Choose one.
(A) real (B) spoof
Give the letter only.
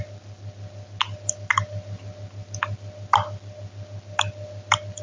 A